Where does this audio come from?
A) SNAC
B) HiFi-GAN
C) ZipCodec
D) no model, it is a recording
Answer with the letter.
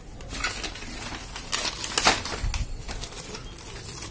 D